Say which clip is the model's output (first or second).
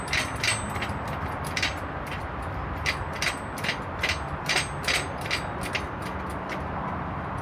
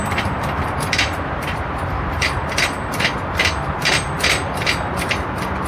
second